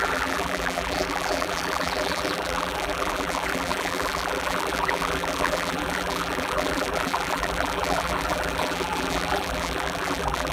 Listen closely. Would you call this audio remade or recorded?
remade